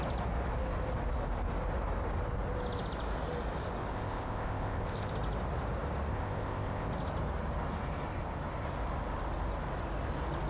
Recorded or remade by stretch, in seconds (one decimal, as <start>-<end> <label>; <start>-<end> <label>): 0.0-3.9 recorded; 3.9-5.1 remade; 5.1-6.1 recorded; 6.1-6.9 remade; 6.9-10.5 recorded